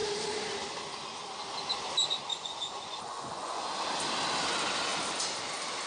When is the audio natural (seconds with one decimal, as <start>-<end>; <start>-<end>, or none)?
0.0-2.3; 3.7-5.9